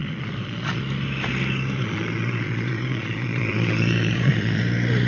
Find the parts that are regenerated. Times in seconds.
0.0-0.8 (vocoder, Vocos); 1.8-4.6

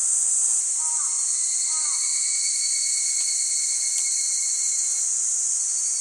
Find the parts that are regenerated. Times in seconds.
none